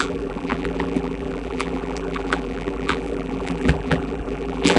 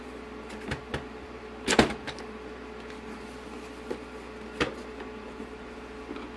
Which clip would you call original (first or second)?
second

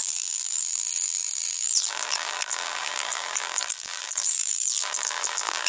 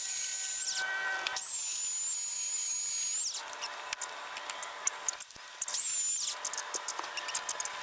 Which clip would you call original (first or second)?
second